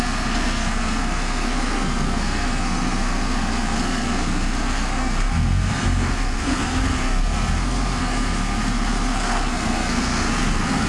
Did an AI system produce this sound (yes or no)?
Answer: yes